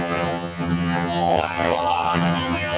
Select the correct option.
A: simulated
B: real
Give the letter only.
A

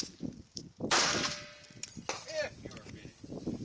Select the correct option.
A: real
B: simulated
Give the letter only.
A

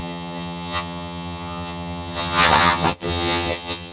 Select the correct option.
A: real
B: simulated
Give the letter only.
B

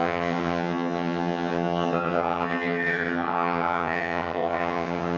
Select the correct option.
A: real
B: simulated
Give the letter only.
B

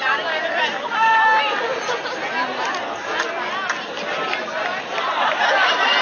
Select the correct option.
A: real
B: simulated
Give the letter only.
A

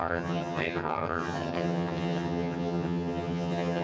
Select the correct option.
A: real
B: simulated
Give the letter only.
B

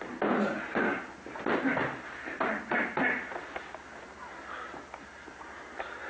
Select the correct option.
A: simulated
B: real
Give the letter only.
B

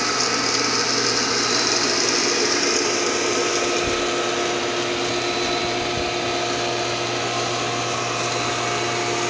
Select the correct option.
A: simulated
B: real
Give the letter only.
B